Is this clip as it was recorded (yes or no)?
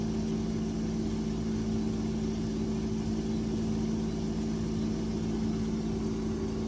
yes